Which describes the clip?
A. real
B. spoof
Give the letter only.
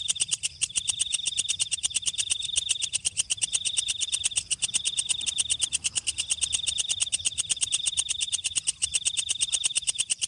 A